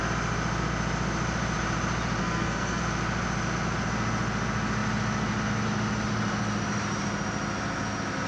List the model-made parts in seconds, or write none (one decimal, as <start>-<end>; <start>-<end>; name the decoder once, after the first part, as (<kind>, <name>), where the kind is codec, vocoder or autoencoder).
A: 2.2-2.8 (codec, SNAC)

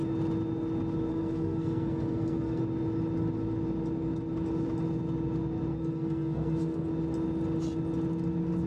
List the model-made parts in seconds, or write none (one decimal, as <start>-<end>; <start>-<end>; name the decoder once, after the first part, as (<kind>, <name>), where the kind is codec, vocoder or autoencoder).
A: 1.1-2.6 (codec, SNAC); 5.7-6.9

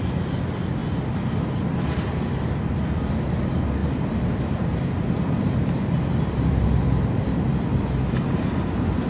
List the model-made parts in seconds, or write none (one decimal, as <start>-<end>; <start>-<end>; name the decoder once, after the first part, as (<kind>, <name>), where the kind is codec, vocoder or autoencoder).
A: 0.8-2.6 (vocoder, BigVGAN v2); 3.8-7.7